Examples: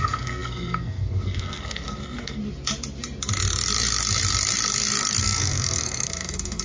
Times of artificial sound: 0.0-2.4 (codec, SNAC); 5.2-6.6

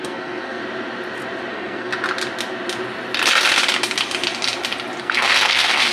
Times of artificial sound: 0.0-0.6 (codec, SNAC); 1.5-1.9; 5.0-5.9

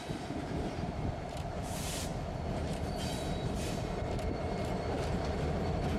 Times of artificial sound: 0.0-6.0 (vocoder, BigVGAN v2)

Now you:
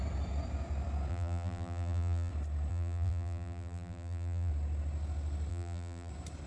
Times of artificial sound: 1.1-2.3 (vocoder, BigVGAN v2); 2.7-4.5; 5.5-6.1

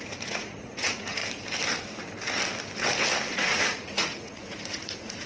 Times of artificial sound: 0.0-1.2 (vocoder, Vocos); 3.3-5.3

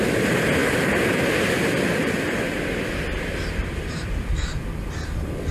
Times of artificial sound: 0.6-2.1 (vocoder, BigVGAN v2); 3.6-4.1